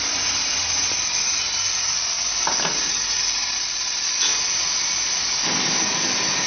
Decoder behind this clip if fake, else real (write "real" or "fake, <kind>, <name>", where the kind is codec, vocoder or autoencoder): real